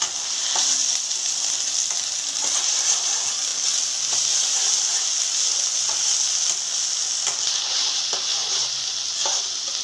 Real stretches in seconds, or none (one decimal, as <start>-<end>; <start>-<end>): 0.0-9.8